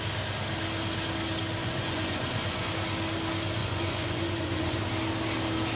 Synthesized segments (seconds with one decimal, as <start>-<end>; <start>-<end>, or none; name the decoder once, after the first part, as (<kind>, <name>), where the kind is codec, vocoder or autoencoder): 1.6-2.7 (vocoder, Vocos); 3.6-4.8